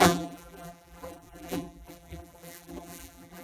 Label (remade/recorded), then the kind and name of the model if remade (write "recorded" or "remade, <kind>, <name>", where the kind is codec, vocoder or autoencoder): remade, vocoder, BigVGAN v2